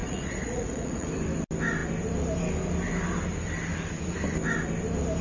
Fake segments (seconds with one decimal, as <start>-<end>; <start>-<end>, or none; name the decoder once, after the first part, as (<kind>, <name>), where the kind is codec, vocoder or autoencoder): 0.0-1.1 (vocoder, Vocos)